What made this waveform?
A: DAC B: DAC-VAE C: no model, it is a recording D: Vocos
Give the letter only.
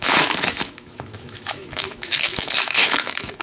B